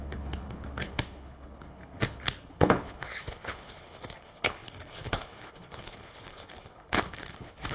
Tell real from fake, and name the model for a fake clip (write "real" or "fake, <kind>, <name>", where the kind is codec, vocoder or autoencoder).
fake, codec, HILCodec